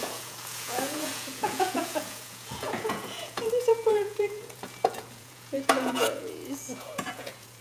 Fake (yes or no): yes